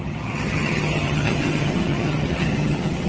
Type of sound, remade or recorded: remade